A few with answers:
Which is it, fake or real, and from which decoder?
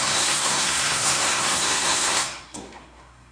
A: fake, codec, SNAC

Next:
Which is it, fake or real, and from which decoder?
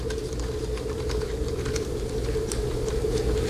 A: real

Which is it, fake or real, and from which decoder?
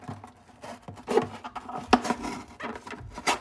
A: real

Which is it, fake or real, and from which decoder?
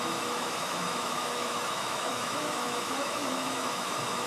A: fake, autoencoder, DAC-VAE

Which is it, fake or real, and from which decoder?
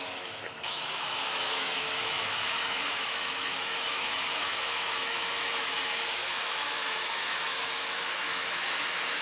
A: fake, autoencoder, DAC-VAE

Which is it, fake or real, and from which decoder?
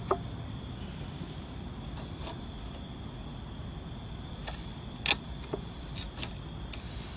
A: real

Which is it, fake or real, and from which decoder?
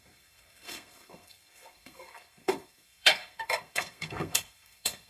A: fake, codec, SNAC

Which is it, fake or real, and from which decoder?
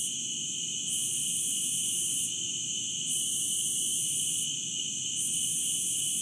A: fake, vocoder, BigVGAN v2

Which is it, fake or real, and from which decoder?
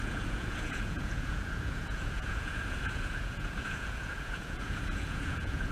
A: fake, vocoder, Vocos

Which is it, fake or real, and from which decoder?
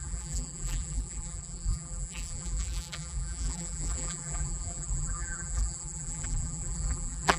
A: fake, vocoder, BigVGAN v2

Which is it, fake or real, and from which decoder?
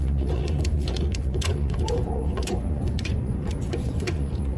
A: fake, vocoder, Vocos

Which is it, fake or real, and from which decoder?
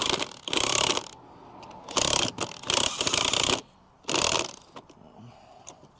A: real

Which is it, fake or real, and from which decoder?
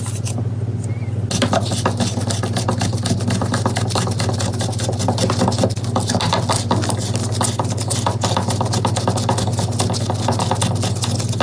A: real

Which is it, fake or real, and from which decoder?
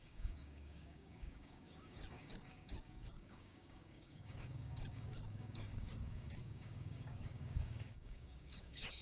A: fake, codec, DAC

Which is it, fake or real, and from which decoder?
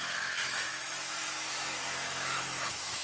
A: fake, autoencoder, DAC-VAE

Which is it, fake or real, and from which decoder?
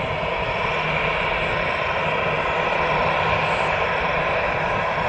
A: real